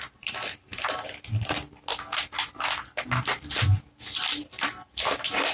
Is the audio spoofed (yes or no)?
no